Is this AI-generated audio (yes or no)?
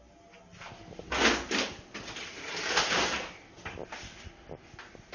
no